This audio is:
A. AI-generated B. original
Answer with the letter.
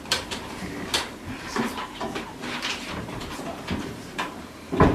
A